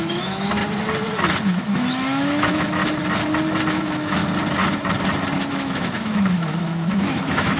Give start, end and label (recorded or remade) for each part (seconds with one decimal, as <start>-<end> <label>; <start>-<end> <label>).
0.0-0.6 remade; 0.6-1.5 recorded; 1.5-2.8 remade; 2.8-3.7 recorded; 3.7-4.2 remade; 4.2-5.5 recorded; 5.5-7.6 remade